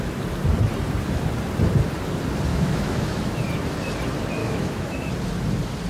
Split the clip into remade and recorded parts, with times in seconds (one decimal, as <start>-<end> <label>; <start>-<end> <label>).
0.0-2.5 recorded; 2.5-3.4 remade; 3.4-4.4 recorded; 4.4-5.1 remade; 5.1-5.9 recorded